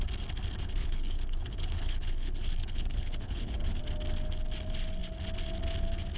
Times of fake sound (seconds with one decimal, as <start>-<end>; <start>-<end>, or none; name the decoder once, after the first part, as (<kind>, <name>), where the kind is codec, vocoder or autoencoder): 0.8-3.8 (codec, HILCodec)